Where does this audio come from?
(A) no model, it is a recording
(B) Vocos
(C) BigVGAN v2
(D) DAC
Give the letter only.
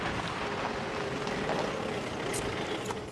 A